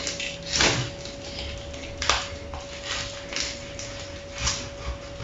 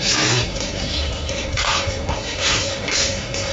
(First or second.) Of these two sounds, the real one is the first